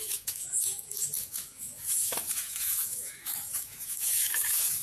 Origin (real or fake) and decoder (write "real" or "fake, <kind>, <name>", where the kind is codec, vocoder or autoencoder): fake, autoencoder, DAC-VAE